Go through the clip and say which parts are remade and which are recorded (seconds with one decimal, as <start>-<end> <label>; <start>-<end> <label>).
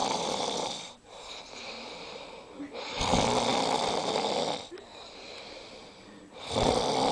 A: 0.0-1.4 remade; 1.4-7.1 recorded